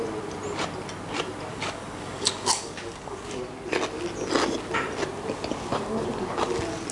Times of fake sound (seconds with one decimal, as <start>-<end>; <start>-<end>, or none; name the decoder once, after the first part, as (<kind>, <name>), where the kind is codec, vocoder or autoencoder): 1.5-3.4 (codec, DAC)